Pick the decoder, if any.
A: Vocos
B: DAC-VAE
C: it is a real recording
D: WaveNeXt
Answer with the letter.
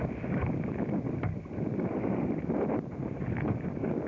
C